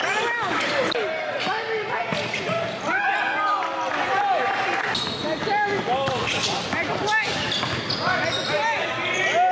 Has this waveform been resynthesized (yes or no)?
no